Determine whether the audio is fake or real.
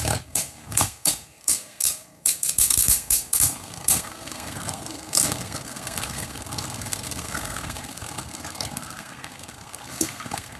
fake